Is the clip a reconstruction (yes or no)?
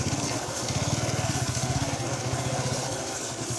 yes